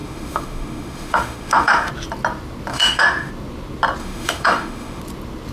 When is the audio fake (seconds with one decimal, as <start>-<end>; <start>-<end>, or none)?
0.0-1.9; 2.7-3.3; 4.0-5.0